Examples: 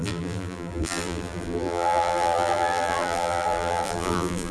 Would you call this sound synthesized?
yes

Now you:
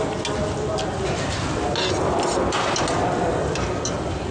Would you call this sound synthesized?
no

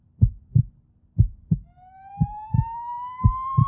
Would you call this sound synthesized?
yes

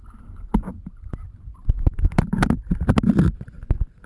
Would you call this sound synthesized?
no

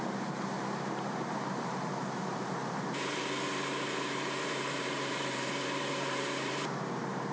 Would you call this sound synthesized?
yes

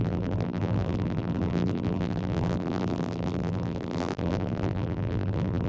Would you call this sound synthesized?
yes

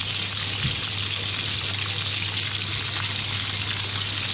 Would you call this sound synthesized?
no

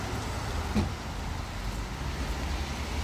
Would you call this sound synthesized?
no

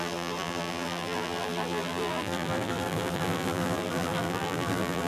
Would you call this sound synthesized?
yes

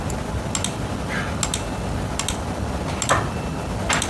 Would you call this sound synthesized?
no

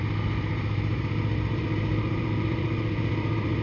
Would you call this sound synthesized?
yes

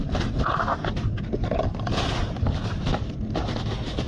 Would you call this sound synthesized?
no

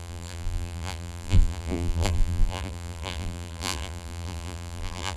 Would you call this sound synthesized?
yes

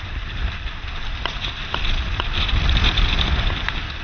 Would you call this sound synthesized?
yes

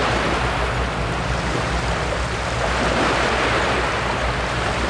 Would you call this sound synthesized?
yes